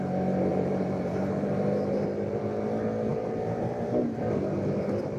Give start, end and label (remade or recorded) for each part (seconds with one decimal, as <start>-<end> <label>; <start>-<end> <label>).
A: 0.0-0.5 recorded; 0.5-2.4 remade; 2.4-3.1 recorded; 3.1-4.0 remade; 4.0-5.2 recorded

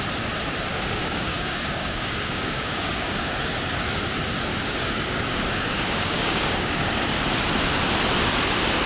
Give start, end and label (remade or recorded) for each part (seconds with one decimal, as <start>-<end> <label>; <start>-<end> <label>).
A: 0.0-0.7 recorded; 0.7-3.3 remade; 3.3-4.5 recorded; 4.5-6.9 remade; 6.9-8.9 recorded

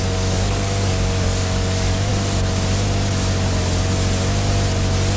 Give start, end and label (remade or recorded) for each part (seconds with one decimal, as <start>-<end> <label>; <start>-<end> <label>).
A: 0.0-2.1 remade; 2.1-5.2 recorded